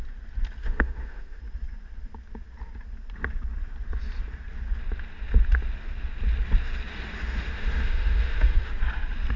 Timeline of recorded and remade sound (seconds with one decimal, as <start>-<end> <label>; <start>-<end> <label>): 0.0-0.6 recorded; 0.6-1.4 remade; 1.4-7.5 recorded; 7.5-8.7 remade; 8.7-9.4 recorded